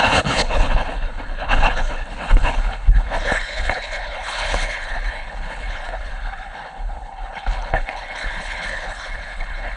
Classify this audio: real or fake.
fake